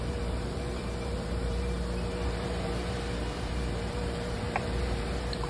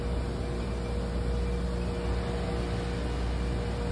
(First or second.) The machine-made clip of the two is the first